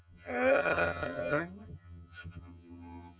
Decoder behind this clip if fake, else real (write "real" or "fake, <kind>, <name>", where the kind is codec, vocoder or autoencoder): fake, vocoder, HiFi-GAN